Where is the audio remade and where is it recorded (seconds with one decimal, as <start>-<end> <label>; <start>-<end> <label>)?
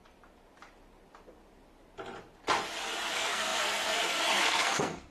0.0-3.1 recorded; 3.1-5.1 remade